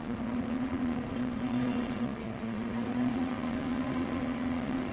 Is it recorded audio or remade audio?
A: remade